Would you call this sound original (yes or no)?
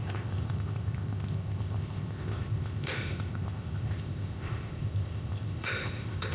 no